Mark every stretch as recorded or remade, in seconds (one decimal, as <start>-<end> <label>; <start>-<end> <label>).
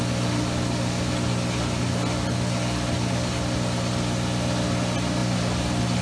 0.0-6.0 recorded